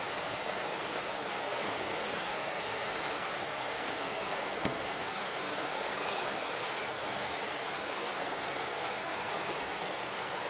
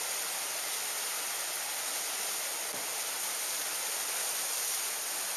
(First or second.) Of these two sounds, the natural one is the second